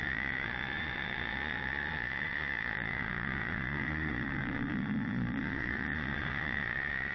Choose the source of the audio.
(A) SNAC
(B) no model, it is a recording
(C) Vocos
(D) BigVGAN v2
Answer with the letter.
C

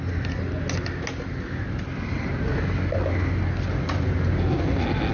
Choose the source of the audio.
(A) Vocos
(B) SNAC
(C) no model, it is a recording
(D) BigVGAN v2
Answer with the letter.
C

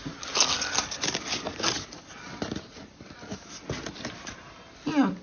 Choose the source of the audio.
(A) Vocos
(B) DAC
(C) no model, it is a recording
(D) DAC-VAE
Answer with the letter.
C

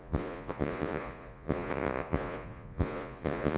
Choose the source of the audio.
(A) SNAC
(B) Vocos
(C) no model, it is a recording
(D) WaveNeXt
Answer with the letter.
B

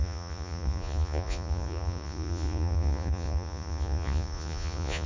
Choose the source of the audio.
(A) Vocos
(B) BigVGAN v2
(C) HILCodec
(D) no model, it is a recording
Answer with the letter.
A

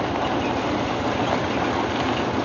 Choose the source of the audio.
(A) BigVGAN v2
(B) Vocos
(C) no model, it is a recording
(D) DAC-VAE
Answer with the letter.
C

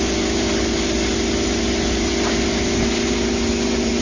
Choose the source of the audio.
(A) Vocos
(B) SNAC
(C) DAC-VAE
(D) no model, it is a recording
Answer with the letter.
D